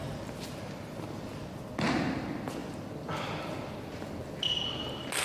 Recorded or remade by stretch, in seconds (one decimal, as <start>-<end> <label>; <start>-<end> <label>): 0.0-5.2 recorded